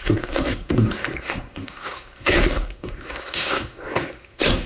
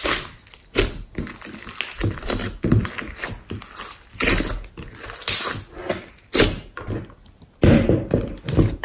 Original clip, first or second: second